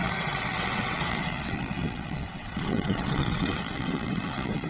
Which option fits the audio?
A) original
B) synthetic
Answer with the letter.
B